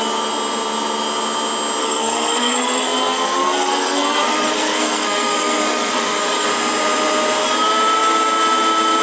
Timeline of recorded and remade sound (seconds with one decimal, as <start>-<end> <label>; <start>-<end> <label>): 0.0-1.8 recorded; 1.8-6.5 remade; 6.5-9.0 recorded